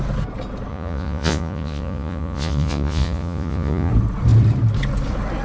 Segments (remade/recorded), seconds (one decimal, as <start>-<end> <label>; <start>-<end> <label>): 0.0-0.7 recorded; 0.7-3.9 remade; 3.9-5.4 recorded